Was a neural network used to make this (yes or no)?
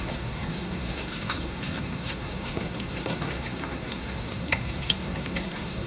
yes